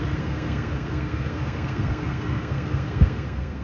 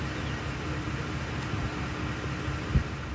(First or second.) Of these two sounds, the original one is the second